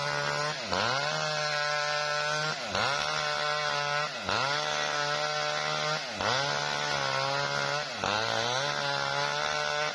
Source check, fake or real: real